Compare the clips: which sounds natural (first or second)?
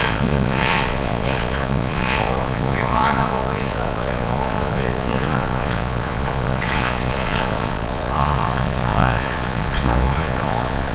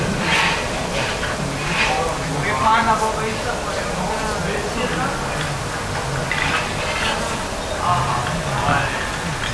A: second